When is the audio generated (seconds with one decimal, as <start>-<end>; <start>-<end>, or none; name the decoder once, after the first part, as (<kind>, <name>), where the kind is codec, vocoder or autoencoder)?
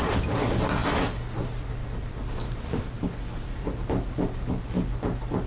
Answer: none